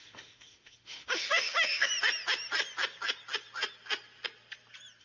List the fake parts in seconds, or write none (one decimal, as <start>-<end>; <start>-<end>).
0.0-1.9